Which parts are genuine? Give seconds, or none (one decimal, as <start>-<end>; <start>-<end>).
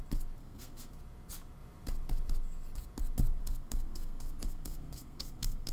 0.0-0.4; 0.9-3.4